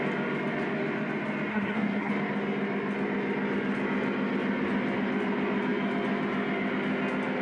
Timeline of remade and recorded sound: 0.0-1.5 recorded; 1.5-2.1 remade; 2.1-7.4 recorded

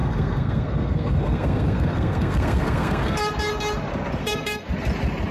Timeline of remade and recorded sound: 0.0-3.2 remade; 3.2-4.2 recorded; 4.2-4.7 remade; 4.7-5.3 recorded

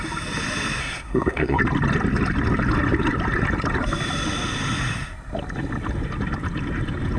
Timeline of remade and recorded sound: 0.0-0.8 recorded; 0.8-1.6 remade; 1.6-7.2 recorded

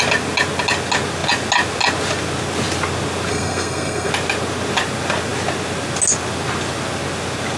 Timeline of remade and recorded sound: 0.0-3.3 recorded; 3.3-4.1 remade; 4.1-7.6 recorded

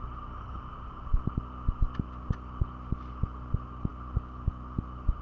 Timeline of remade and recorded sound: 0.0-5.2 recorded

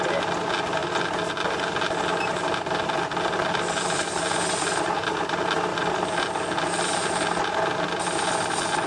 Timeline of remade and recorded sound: 0.0-8.9 recorded